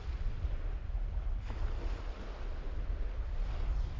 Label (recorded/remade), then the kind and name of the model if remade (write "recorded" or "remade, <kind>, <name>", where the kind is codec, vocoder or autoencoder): recorded